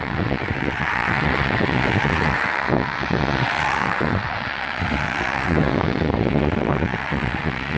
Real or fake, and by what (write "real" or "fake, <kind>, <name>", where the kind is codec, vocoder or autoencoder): fake, vocoder, WaveNeXt